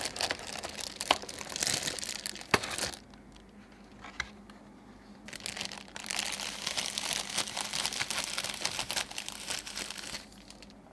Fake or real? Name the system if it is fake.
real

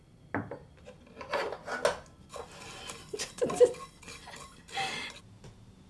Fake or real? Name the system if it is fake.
real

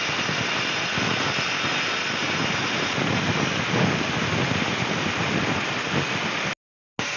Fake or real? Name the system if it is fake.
real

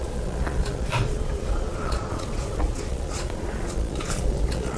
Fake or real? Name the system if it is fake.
fake, vocoder, Vocos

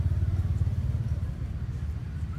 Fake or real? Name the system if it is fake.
real